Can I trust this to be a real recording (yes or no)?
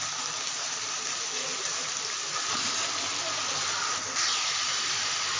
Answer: no